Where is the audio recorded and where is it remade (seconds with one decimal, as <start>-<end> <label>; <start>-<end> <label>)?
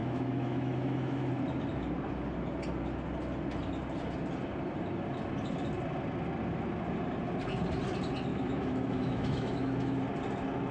0.0-1.3 remade; 1.3-8.3 recorded; 8.3-10.0 remade; 10.0-10.7 recorded